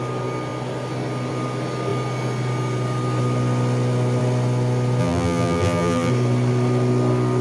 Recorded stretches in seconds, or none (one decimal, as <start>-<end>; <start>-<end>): 0.0-5.0; 6.1-7.4

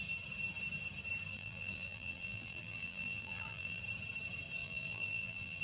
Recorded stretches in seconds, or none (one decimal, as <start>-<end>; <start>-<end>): 0.0-1.3; 3.8-4.6

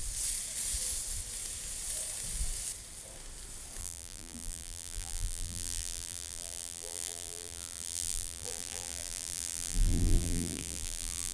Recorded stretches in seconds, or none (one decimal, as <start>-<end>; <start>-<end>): 0.0-3.8